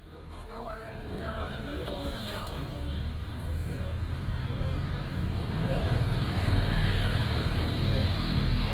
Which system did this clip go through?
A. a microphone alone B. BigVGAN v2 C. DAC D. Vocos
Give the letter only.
C